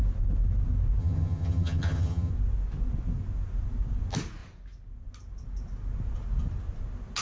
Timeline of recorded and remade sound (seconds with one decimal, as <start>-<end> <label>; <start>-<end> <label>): 0.0-1.0 recorded; 1.0-2.3 remade; 2.3-7.2 recorded